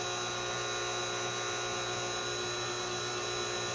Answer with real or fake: real